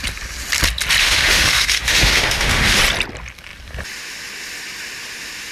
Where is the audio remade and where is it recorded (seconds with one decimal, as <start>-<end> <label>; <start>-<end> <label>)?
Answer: 0.0-1.0 recorded; 1.0-2.8 remade; 2.8-5.5 recorded